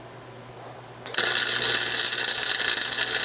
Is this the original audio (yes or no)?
yes